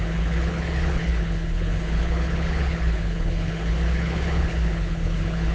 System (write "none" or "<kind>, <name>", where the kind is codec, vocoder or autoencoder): codec, HILCodec